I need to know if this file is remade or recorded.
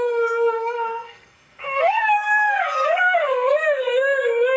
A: remade